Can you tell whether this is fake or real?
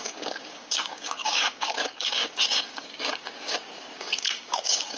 fake